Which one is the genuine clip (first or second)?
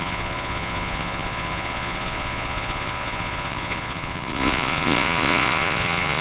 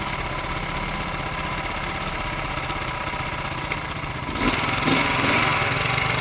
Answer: second